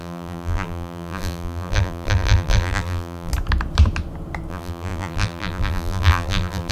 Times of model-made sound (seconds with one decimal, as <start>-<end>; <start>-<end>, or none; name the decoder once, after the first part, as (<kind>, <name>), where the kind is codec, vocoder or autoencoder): 0.0-3.3 (vocoder, BigVGAN v2); 4.5-6.7